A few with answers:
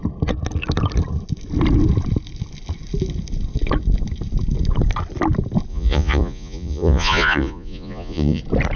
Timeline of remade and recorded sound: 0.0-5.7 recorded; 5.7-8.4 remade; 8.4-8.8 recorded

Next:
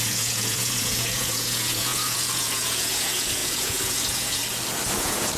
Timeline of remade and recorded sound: 0.0-4.4 remade; 4.4-5.0 recorded; 5.0-5.4 remade

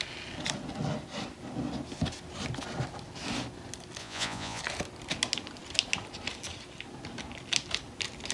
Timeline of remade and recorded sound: 0.0-4.0 recorded; 4.0-4.6 remade; 4.6-8.3 recorded

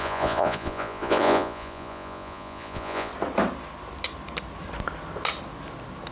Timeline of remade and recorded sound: 0.0-3.1 remade; 3.1-6.1 recorded